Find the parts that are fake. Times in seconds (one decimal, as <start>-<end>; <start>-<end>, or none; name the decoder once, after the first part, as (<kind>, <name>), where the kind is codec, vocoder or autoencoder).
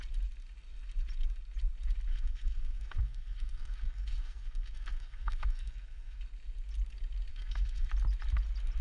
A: 2.1-6.2 (codec, SNAC); 7.3-7.9